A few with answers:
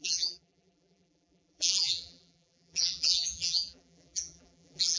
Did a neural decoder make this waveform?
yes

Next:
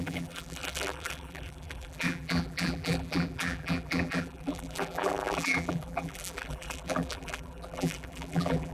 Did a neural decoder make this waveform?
yes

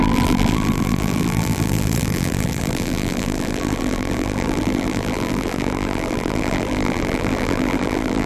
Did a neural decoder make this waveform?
yes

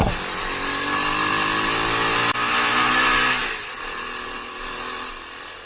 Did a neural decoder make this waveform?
no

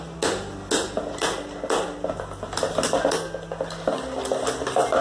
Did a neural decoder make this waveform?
no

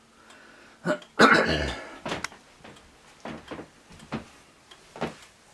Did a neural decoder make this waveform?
no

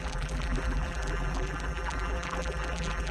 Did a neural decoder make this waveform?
yes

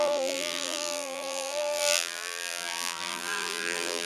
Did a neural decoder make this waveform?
yes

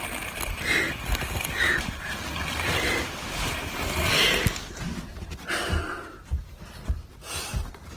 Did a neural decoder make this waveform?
no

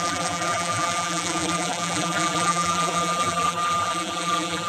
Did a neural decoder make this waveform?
yes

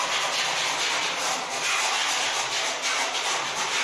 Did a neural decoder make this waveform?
no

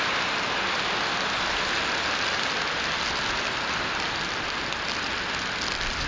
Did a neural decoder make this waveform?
no